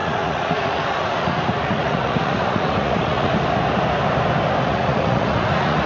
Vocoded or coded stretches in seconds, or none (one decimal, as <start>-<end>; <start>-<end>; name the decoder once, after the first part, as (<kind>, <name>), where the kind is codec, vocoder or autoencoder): 0.0-3.3 (vocoder, Vocos); 4.6-5.9